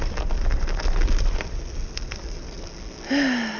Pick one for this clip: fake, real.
real